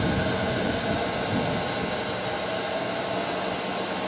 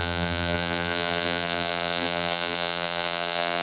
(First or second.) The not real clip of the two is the second